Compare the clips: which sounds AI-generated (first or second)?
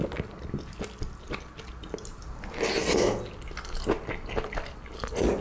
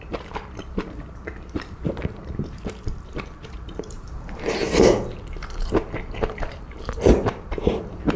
second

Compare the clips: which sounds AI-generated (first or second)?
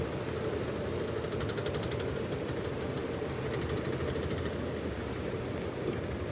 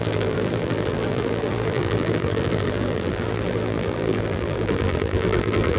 second